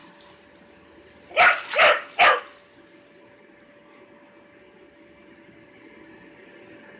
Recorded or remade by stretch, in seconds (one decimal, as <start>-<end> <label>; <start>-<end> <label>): 0.0-7.0 recorded